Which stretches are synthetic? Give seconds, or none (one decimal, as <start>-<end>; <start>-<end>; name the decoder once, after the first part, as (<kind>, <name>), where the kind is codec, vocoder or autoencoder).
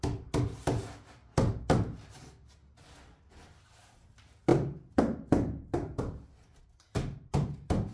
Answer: 4.5-6.6 (vocoder, BigVGAN v2)